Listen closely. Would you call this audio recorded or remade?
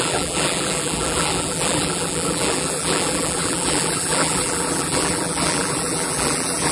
remade